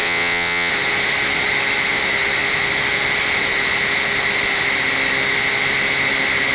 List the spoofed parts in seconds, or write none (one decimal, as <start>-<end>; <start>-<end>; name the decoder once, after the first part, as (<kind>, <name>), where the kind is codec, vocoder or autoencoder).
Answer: 0.0-0.7 (vocoder, WaveNeXt)